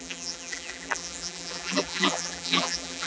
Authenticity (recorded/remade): remade